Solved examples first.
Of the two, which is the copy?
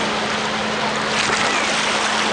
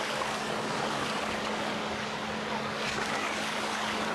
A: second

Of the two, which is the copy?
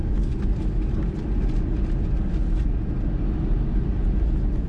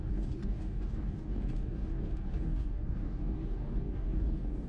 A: second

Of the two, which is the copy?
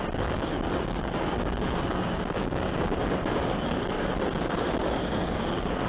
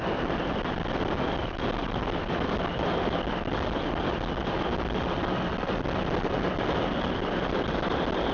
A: first